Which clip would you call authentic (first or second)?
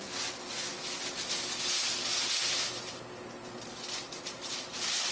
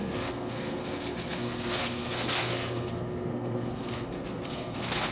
first